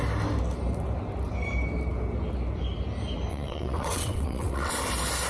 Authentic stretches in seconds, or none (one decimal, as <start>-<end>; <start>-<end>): 0.0-3.3; 4.7-5.3